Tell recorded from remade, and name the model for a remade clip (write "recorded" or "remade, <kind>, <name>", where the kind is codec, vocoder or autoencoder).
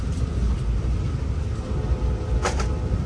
recorded